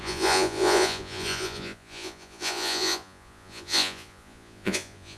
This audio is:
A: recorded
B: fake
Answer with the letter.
B